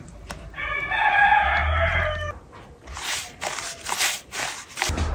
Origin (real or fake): real